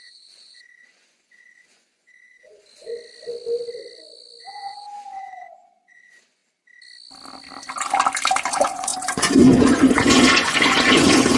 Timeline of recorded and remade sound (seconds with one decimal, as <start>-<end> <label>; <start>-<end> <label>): 0.0-2.9 remade; 2.9-4.4 recorded; 4.4-6.4 remade; 6.4-8.5 recorded; 8.5-11.4 remade